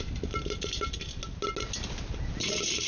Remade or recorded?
recorded